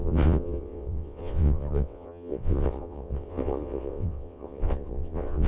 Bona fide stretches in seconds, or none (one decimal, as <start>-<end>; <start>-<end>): none